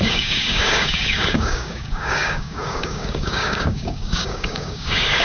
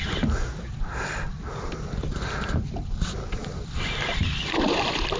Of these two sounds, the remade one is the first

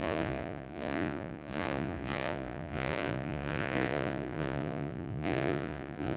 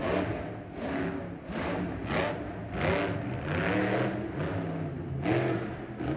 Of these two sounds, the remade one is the first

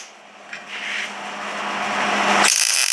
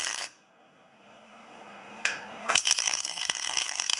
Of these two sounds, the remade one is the second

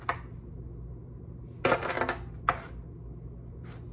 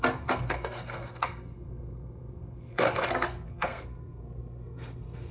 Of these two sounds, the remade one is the second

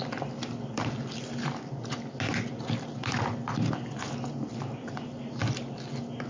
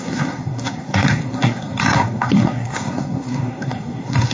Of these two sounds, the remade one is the second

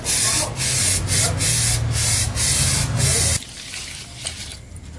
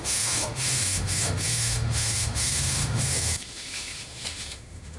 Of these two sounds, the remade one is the second